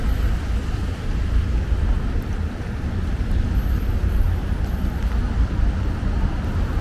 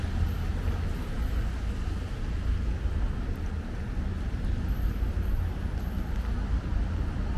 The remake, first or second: first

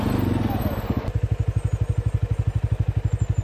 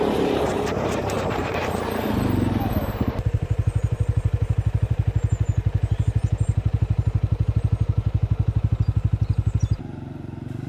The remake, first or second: second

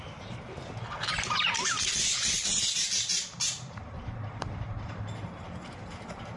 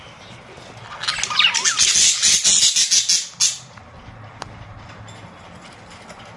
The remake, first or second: first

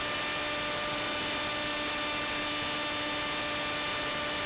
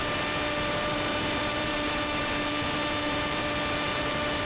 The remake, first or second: second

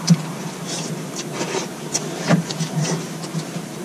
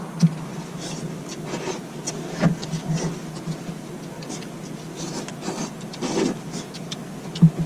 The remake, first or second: first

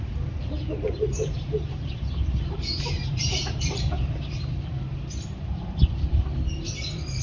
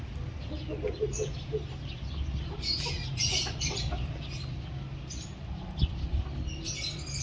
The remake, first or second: first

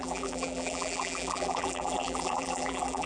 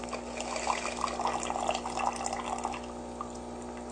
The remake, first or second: first